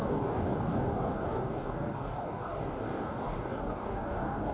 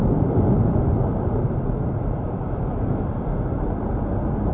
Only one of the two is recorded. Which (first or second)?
second